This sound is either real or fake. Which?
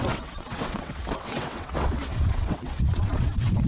fake